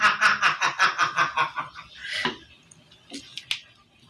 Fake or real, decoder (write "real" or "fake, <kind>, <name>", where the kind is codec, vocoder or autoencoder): real